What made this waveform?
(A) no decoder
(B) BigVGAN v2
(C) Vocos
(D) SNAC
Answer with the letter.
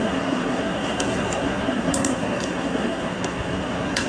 D